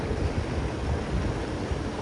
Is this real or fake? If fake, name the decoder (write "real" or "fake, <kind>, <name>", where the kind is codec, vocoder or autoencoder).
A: real